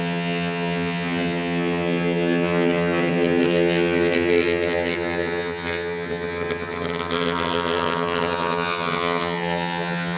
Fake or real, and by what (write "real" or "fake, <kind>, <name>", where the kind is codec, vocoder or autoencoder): fake, vocoder, HiFi-GAN